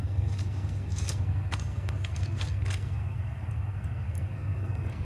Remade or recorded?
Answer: remade